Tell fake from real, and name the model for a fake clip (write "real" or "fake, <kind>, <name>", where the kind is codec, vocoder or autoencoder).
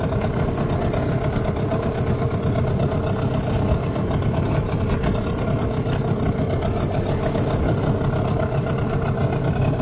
real